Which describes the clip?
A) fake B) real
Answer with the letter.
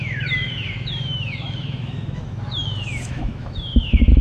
A